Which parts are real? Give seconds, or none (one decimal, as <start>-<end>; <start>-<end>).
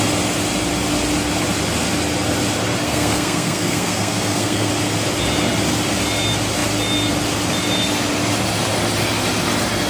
0.0-2.8; 4.7-9.9